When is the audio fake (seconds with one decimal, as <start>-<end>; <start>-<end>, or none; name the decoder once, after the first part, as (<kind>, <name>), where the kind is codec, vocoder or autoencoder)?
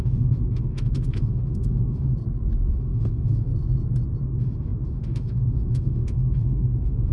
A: 0.0-2.1 (autoencoder, DAC-VAE); 2.7-3.5; 4.2-7.1